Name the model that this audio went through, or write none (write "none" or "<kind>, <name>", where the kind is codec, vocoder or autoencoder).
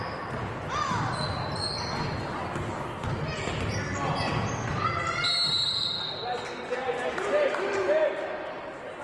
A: none